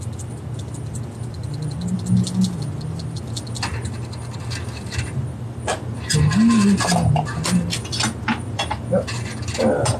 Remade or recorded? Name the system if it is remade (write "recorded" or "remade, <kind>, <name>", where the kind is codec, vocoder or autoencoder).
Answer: recorded